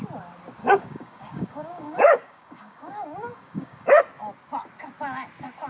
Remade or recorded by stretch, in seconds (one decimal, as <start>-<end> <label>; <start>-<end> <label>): 0.0-0.6 recorded; 0.6-4.0 remade; 4.0-5.7 recorded